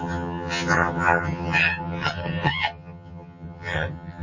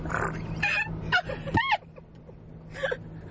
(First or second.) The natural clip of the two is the second